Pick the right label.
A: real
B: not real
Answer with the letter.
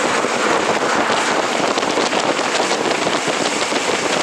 A